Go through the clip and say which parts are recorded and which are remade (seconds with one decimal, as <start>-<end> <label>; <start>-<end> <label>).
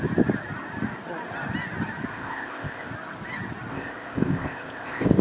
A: 0.0-2.1 recorded; 2.1-2.9 remade; 2.9-3.7 recorded; 3.7-5.2 remade